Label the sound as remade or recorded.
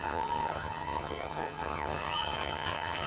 remade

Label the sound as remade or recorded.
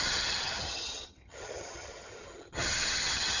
remade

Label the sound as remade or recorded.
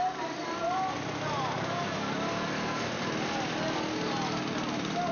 recorded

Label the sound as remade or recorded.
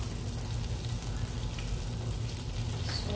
recorded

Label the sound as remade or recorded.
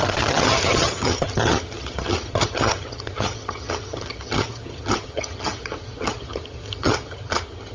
remade